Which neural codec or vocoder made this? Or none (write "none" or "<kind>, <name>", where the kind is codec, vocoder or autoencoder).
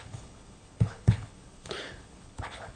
codec, HILCodec